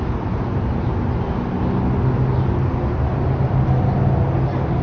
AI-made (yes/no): no